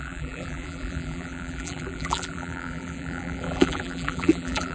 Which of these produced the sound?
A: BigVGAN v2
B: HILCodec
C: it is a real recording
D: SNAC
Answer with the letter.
A